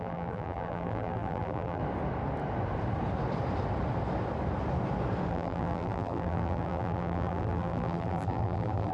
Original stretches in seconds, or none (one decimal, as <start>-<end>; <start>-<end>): 1.8-5.3